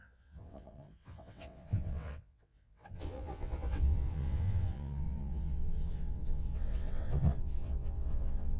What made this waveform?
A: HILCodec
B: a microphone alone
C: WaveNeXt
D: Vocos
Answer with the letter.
C